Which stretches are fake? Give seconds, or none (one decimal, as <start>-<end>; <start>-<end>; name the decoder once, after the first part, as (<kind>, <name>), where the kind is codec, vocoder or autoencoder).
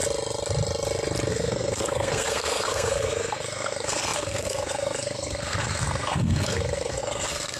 1.3-7.6 (codec, SNAC)